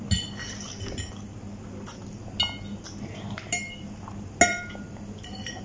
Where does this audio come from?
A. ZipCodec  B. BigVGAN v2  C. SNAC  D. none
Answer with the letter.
D